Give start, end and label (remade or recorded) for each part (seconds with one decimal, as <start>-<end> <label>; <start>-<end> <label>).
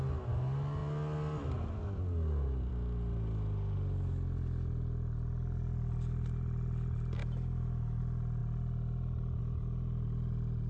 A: 0.0-7.2 recorded; 7.2-8.0 remade; 8.0-10.7 recorded